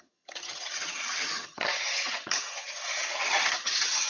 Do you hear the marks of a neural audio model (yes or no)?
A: yes